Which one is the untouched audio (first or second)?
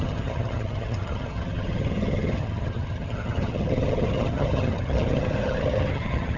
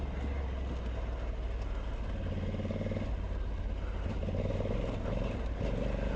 second